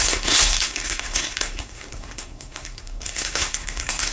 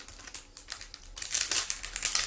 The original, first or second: second